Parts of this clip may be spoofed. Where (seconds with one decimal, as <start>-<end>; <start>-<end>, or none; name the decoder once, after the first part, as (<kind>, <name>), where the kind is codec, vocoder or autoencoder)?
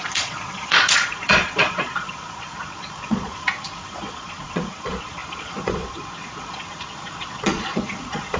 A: 0.0-8.4 (vocoder, Vocos)